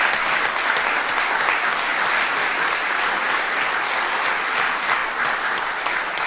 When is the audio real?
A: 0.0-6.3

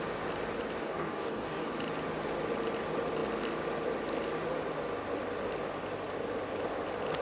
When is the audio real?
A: 0.0-0.8; 1.7-7.2

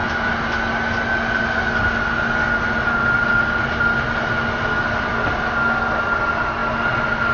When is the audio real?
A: 0.0-7.3